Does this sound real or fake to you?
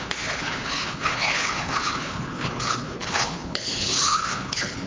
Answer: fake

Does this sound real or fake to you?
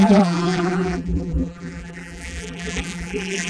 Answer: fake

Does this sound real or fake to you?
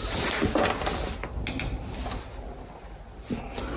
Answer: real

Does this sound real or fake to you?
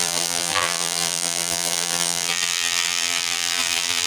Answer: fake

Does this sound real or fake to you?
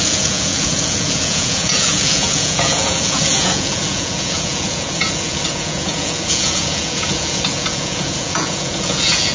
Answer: fake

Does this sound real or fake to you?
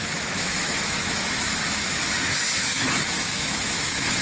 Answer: fake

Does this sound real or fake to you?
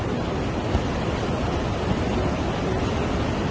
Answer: real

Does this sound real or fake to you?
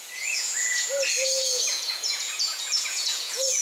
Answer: fake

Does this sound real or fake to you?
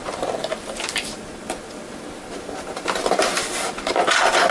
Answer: real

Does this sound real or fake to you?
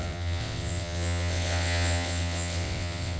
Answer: fake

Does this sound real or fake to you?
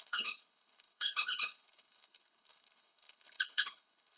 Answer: fake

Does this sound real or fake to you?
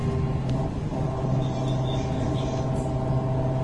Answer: real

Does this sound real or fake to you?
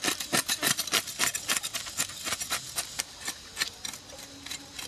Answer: real